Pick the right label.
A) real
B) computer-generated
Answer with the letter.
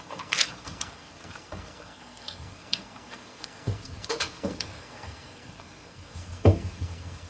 B